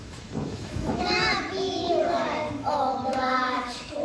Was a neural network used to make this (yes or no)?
yes